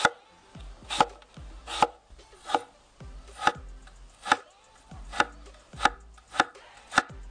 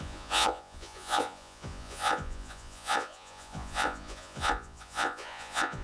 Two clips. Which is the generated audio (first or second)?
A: second